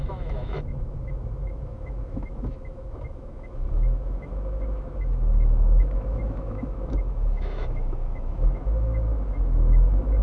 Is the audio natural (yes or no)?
no